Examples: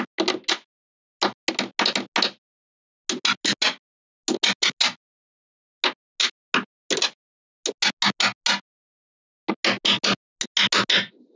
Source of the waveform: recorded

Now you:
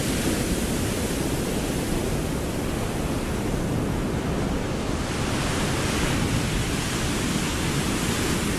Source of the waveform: recorded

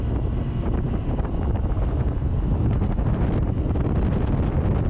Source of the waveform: recorded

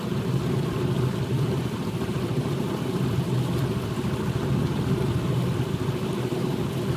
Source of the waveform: remade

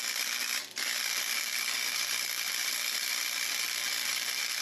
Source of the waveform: remade